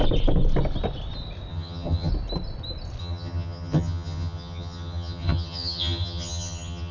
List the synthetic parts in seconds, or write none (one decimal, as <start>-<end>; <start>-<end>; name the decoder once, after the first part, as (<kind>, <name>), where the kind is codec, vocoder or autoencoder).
1.5-2.1 (vocoder, HiFi-GAN); 3.0-6.9